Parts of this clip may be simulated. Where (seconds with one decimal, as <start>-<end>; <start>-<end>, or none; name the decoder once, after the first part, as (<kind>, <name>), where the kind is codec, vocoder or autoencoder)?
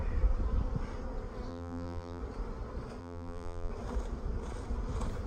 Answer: 1.5-2.2 (vocoder, BigVGAN v2); 3.0-3.7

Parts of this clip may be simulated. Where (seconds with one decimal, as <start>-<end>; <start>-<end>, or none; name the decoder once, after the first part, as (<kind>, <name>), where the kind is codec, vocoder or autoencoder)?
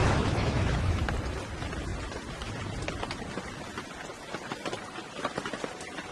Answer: 0.0-1.0 (autoencoder, DAC-VAE)